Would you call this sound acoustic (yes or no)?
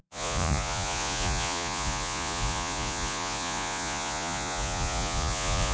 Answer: no